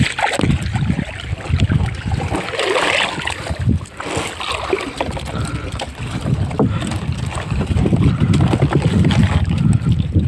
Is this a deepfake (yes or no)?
no